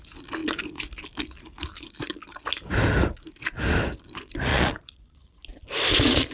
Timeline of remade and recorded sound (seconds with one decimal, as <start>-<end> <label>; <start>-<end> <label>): 0.0-4.5 recorded; 4.5-5.4 remade; 5.4-6.3 recorded